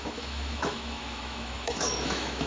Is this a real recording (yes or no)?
no